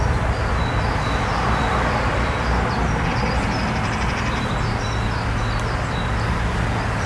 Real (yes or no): yes